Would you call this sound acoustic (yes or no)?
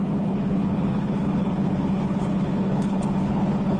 no